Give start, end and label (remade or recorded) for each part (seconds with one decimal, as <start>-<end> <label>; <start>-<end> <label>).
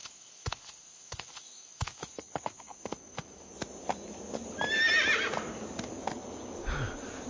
0.0-3.5 remade; 3.5-7.3 recorded